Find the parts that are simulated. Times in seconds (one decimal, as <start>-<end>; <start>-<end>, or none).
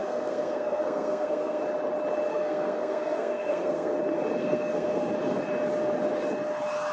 0.0-1.6; 2.3-4.0; 4.4-5.0